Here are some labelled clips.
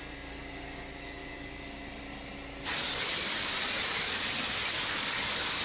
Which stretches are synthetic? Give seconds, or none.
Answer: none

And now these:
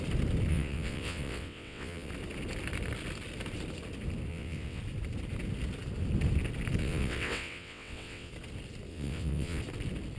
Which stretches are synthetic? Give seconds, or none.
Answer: 0.5-2.1 (vocoder, WaveNeXt); 4.3-4.8; 6.8-8.3; 8.9-9.6

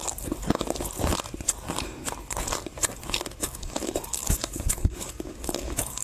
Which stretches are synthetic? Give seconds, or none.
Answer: 3.4-6.0 (codec, DAC)

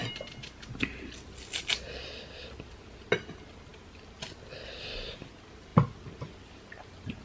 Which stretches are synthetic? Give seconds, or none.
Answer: none

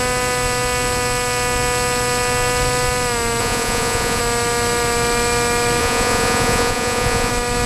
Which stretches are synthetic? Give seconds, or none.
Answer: 3.4-4.2 (vocoder, Vocos); 5.8-7.3

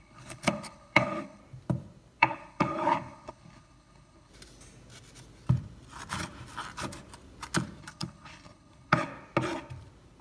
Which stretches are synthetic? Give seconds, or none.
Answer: 0.0-1.4 (codec, HILCodec); 2.2-4.3; 7.8-9.1